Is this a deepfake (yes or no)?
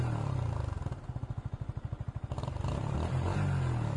no